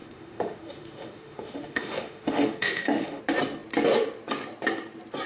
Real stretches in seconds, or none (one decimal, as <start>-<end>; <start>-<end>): 3.2-5.3